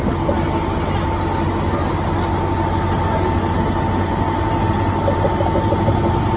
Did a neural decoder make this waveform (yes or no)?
no